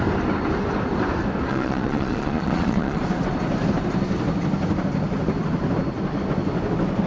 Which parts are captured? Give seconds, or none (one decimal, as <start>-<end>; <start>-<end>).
0.0-1.5; 3.0-7.1